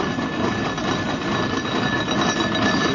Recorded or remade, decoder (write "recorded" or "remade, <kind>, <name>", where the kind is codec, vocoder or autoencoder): recorded